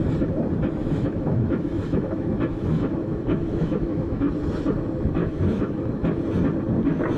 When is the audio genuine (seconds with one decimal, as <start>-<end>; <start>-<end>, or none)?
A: 0.0-0.8; 4.3-5.2; 5.9-7.2

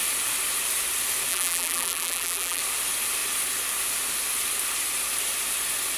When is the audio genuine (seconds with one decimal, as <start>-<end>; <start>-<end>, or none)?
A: 0.0-1.3; 2.6-6.0

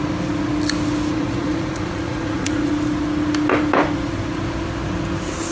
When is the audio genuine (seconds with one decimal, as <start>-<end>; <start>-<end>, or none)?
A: 0.0-1.1; 2.7-5.5

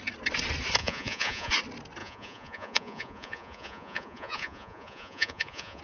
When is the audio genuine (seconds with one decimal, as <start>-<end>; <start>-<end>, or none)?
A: 0.0-0.8; 1.5-2.0

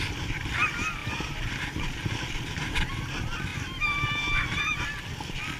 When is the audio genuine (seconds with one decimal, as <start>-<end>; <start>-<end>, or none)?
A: 0.0-1.0; 2.7-3.5; 4.6-5.6

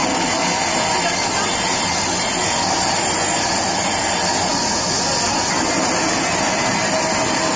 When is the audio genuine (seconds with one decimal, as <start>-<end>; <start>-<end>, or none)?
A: 0.0-7.6